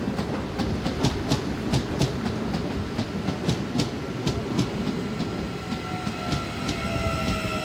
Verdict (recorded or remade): recorded